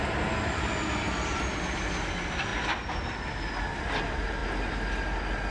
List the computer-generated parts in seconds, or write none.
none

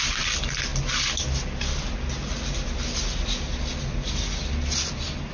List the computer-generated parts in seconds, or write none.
none